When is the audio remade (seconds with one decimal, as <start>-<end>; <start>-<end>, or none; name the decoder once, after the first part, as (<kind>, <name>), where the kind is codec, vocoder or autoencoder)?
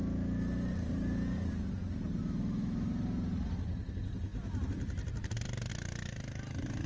2.2-2.9 (autoencoder, DAC-VAE)